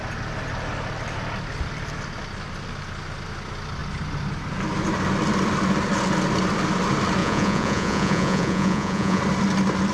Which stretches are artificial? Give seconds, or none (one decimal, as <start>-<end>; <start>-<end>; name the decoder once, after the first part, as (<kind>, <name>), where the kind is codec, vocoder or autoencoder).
7.2-9.2 (vocoder, Vocos)